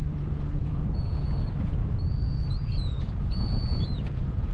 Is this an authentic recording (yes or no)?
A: no